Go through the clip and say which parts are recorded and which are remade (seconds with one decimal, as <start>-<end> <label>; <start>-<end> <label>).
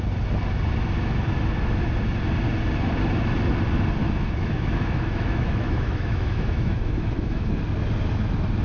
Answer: 0.0-4.0 recorded; 4.0-7.5 remade; 7.5-8.6 recorded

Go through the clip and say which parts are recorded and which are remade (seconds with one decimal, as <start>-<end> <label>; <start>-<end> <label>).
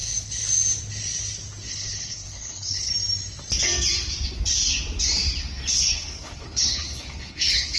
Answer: 0.0-1.7 recorded; 1.7-2.9 remade; 2.9-5.7 recorded; 5.7-7.8 remade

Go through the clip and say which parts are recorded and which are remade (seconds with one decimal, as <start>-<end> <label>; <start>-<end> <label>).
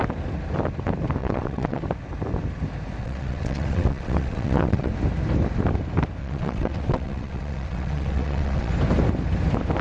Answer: 0.0-1.2 recorded; 1.2-1.8 remade; 1.8-3.0 recorded; 3.0-4.9 remade; 4.9-6.2 recorded; 6.2-8.7 remade; 8.7-9.8 recorded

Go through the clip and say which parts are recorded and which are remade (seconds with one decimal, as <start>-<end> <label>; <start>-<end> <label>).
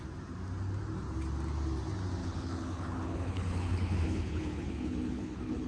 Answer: 0.0-2.2 recorded; 2.2-5.7 remade